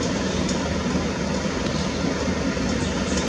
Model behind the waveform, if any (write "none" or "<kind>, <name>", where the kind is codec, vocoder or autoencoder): none